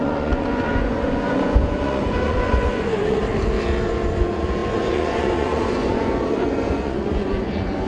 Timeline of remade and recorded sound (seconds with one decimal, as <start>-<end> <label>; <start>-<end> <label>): 0.0-3.2 remade; 3.2-3.9 recorded; 3.9-7.9 remade